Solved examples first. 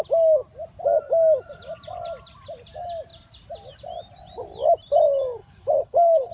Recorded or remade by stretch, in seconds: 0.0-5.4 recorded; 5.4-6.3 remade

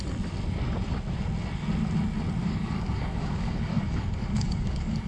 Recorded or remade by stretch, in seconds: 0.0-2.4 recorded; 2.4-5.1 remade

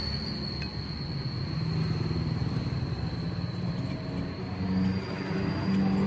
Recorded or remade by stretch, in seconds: 0.0-6.1 recorded